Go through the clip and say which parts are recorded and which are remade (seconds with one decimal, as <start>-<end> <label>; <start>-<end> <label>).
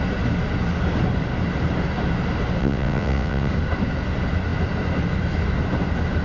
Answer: 0.0-2.6 recorded; 2.6-3.5 remade; 3.5-6.2 recorded